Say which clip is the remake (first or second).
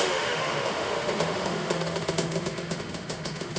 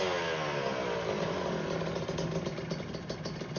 first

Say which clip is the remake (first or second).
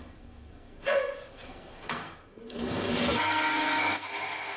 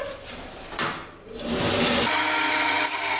first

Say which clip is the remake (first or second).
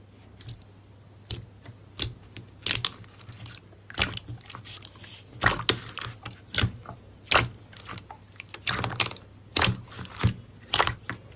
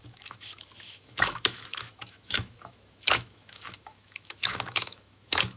second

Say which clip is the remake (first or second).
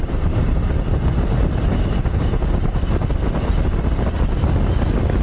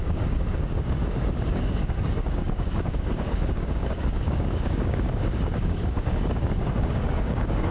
second